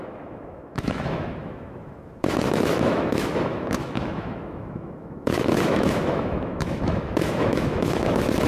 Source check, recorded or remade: remade